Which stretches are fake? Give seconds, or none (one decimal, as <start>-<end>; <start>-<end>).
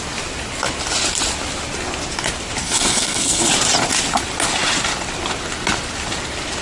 2.6-3.5